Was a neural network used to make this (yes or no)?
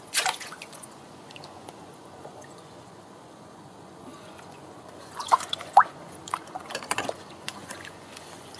yes